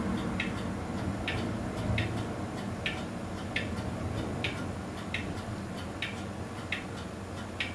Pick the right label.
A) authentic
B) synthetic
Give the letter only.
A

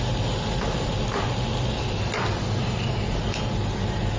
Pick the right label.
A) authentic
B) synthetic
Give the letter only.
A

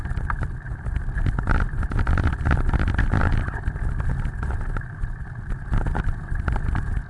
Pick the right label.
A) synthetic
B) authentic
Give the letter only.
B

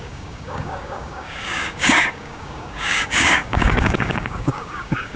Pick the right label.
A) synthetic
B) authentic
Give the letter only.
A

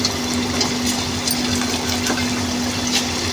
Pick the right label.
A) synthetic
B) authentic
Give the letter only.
B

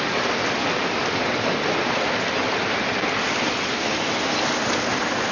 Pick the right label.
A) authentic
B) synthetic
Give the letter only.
A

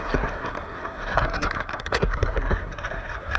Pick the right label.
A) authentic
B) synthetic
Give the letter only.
B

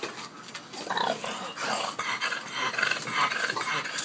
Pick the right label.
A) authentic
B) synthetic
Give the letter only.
A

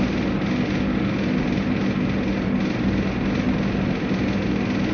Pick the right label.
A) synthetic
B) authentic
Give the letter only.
B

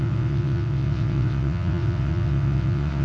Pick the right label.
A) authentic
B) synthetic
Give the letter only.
B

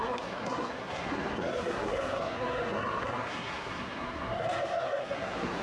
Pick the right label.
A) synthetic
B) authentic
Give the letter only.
A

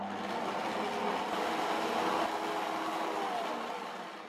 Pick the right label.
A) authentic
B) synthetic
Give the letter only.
A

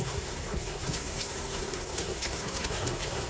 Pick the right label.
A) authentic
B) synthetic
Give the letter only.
B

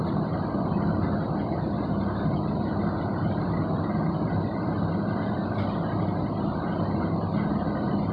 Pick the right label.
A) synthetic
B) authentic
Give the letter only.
B